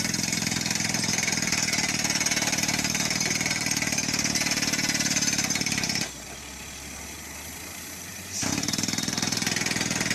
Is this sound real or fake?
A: fake